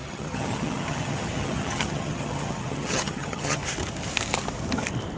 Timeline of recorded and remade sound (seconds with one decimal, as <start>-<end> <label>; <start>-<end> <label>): 0.0-3.6 remade; 3.6-5.2 recorded